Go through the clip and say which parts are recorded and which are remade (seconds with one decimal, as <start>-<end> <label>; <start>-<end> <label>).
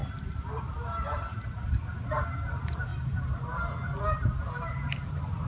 0.0-2.9 remade; 2.9-4.5 recorded; 4.5-5.5 remade